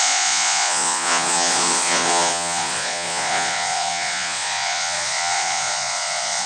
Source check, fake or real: fake